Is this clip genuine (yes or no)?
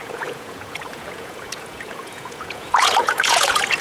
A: no